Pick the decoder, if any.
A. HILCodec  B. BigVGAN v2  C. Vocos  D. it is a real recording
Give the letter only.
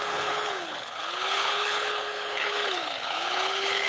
A